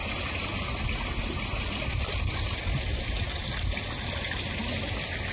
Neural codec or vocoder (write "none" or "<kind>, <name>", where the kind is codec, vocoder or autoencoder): none